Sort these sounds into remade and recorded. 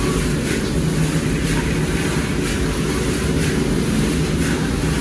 recorded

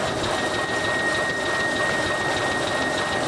recorded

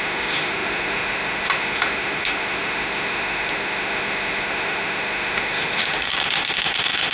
remade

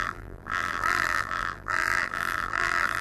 remade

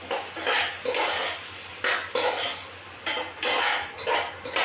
recorded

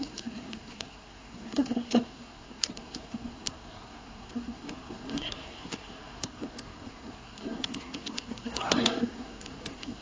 remade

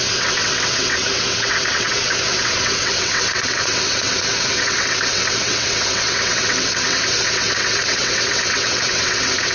remade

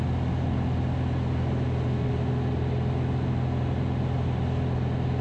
recorded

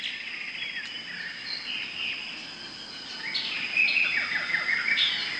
recorded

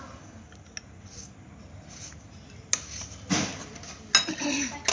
recorded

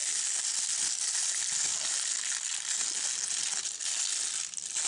recorded